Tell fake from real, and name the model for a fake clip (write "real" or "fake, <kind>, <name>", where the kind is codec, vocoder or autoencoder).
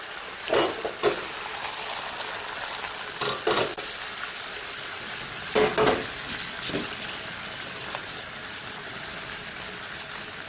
real